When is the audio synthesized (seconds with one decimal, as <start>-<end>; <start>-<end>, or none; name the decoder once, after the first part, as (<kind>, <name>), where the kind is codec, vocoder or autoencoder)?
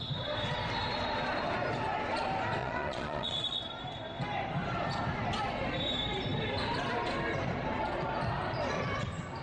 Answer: 2.6-3.6 (vocoder, Vocos)